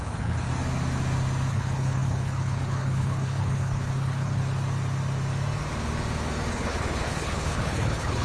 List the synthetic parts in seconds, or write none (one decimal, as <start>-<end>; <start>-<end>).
0.0-0.5; 1.5-4.4; 6.5-8.2